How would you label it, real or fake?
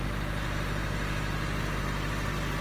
real